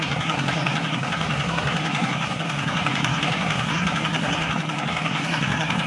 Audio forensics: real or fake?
fake